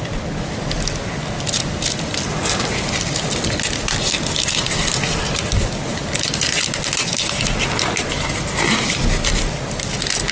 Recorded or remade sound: recorded